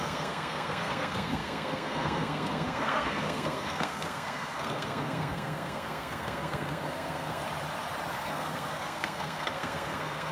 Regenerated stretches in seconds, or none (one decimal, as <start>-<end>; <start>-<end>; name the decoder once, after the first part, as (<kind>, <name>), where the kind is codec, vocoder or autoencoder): 0.0-7.4 (codec, SNAC); 8.2-10.3